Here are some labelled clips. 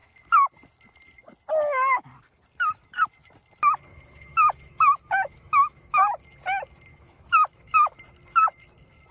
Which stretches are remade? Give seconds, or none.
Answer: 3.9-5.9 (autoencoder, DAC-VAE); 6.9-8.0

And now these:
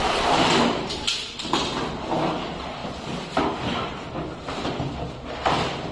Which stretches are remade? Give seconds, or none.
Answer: none